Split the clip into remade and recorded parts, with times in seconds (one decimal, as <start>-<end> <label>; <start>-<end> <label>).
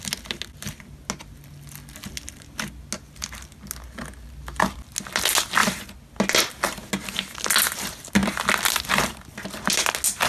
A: 0.0-10.3 recorded